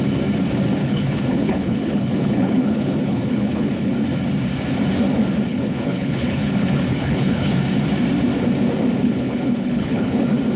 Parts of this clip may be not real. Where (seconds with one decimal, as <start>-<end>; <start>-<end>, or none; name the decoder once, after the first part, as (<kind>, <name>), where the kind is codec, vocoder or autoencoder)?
0.8-3.9 (codec, HILCodec); 5.5-7.5; 9.0-10.2

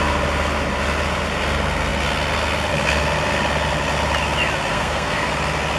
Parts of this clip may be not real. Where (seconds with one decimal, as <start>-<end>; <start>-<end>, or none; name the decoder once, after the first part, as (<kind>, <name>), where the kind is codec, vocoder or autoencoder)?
4.7-5.3 (codec, SNAC)

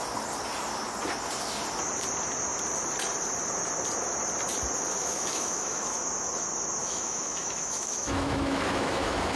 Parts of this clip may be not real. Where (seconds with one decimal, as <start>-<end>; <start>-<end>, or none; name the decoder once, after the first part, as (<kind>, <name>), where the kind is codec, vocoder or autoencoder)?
5.0-6.0 (autoencoder, DAC-VAE); 6.8-9.4

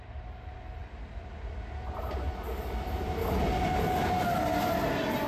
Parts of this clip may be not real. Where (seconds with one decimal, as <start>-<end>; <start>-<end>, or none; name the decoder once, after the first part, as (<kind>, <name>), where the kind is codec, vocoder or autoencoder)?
none

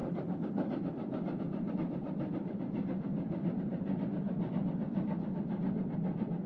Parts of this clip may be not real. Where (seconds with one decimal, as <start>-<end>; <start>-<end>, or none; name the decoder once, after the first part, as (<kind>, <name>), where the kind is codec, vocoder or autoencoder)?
1.7-3.1 (vocoder, BigVGAN v2); 4.5-6.5

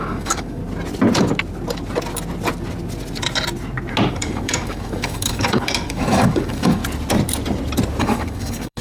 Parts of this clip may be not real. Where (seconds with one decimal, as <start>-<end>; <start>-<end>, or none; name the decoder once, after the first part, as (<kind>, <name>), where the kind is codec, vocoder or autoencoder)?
0.0-0.6 (codec, DAC); 4.1-6.8; 8.0-8.8

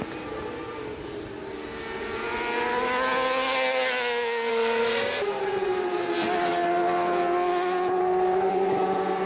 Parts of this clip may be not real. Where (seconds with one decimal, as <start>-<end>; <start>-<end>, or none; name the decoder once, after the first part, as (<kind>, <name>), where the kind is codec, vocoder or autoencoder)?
4.5-5.2 (codec, SNAC); 8.0-8.5

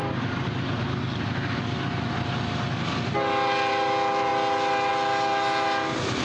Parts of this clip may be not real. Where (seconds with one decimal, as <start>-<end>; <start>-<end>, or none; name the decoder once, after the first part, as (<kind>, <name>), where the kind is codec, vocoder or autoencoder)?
none